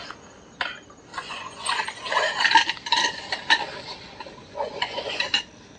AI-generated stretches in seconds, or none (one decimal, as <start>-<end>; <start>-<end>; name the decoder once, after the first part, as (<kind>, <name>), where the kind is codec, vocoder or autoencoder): 1.1-2.0 (vocoder, Vocos); 4.4-5.2